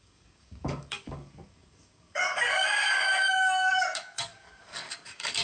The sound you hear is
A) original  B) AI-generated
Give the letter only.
B